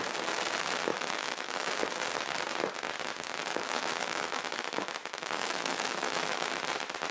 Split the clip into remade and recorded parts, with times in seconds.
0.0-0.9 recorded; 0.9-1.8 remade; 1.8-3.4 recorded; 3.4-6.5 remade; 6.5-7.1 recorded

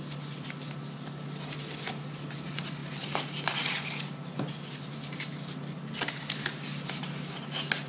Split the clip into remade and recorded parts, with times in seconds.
0.0-7.9 recorded

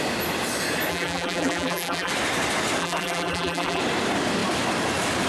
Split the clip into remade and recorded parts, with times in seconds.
0.0-0.9 recorded; 0.9-2.1 remade; 2.1-2.8 recorded; 2.8-3.8 remade; 3.8-5.3 recorded

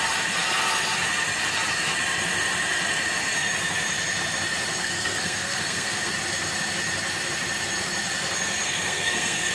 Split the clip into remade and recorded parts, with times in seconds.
0.0-4.8 recorded; 4.8-6.1 remade; 6.1-8.6 recorded; 8.6-9.5 remade